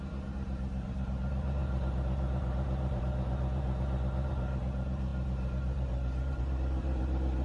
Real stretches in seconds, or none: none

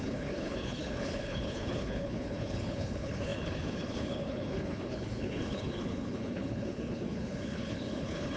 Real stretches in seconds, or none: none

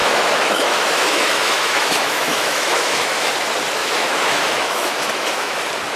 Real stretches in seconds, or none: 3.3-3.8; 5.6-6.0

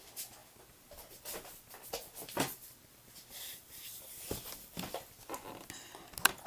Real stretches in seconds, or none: 0.0-6.5

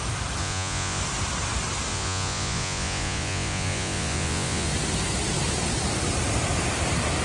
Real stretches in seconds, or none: 0.0-0.4; 1.0-1.9; 4.7-7.2